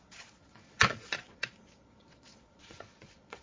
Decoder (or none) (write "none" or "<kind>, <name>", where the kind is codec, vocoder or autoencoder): vocoder, Vocos